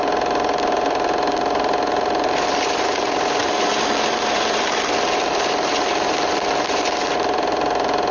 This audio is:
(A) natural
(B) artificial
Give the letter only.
B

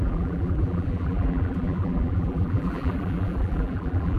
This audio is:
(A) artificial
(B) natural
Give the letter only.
A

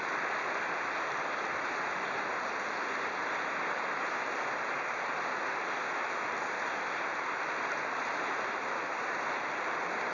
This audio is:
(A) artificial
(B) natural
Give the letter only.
B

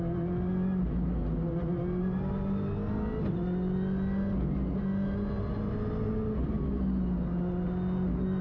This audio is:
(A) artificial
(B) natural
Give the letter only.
B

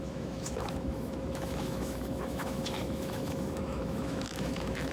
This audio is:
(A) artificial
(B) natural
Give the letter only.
A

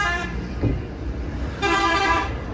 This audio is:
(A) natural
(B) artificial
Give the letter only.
B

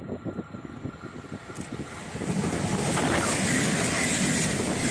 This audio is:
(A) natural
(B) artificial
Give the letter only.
A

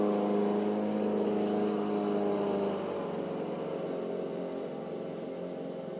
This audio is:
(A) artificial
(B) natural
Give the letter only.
B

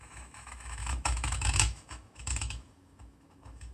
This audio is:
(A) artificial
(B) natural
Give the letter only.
A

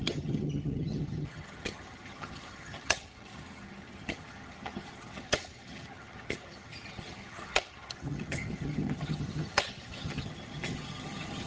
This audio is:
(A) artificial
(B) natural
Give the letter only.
A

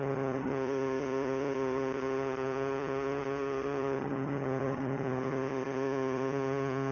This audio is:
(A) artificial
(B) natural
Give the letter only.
A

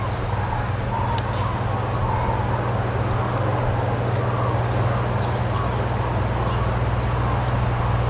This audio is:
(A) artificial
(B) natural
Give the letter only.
B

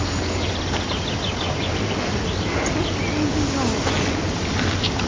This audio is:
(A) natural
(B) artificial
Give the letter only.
A